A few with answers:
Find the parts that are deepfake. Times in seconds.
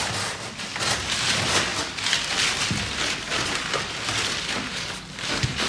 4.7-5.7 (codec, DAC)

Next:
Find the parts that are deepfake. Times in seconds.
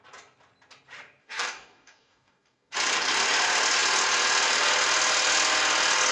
1.2-2.7 (codec, DAC)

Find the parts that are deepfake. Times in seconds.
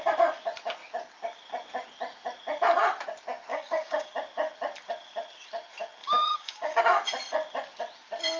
3.5-4.1 (codec, DAC); 6.0-6.8